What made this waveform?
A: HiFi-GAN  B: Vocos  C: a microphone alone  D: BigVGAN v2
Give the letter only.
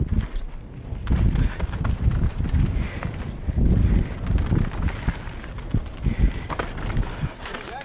C